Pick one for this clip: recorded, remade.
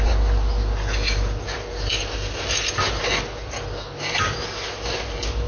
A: recorded